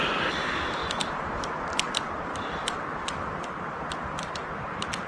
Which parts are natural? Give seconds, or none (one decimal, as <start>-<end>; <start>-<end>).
0.0-5.1